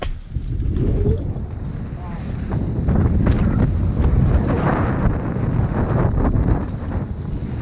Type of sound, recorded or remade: recorded